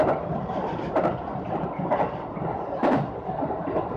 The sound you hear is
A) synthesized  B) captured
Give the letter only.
B